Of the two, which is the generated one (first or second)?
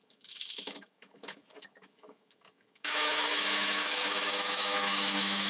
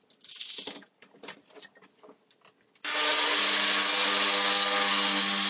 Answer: first